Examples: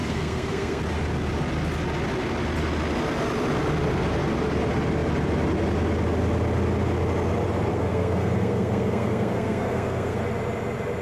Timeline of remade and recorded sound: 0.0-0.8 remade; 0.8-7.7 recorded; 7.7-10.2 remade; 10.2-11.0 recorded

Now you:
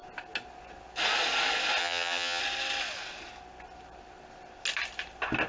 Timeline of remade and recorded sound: 0.0-1.8 recorded; 1.8-2.4 remade; 2.4-5.5 recorded

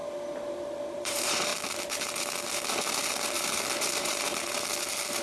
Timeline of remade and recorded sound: 0.0-0.9 recorded; 0.9-1.5 remade; 1.5-3.3 recorded; 3.3-4.3 remade; 4.3-5.2 recorded

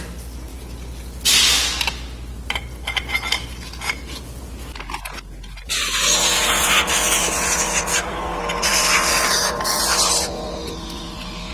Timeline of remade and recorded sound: 0.0-7.9 recorded; 7.9-8.4 remade; 8.4-9.1 recorded; 9.1-9.8 remade; 9.8-11.5 recorded